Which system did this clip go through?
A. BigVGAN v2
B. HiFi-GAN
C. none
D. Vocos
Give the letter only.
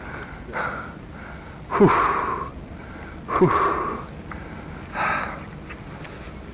C